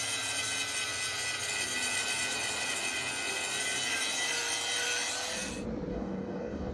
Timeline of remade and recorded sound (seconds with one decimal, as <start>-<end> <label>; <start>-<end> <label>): 0.0-5.9 recorded; 5.9-6.7 remade

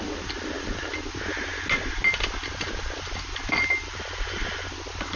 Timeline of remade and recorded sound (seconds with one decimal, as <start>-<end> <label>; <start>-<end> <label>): 0.0-5.2 recorded

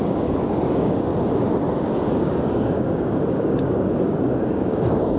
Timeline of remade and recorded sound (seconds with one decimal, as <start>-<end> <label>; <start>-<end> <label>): 0.0-1.1 remade; 1.1-2.2 recorded; 2.2-5.2 remade

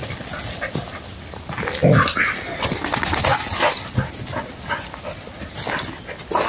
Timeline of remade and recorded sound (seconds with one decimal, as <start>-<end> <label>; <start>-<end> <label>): 0.0-6.5 recorded

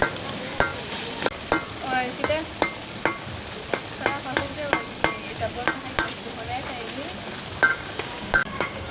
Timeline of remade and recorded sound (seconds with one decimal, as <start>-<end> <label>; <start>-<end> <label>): 0.0-7.7 recorded; 7.7-8.9 remade